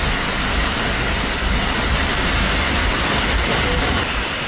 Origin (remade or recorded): recorded